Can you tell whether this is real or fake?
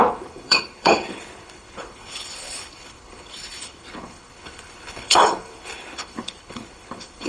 fake